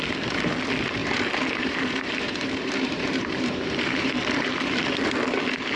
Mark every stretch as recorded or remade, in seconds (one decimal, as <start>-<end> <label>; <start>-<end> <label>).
0.0-1.0 recorded; 1.0-4.5 remade; 4.5-5.8 recorded